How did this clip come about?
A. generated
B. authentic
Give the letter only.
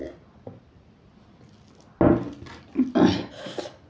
B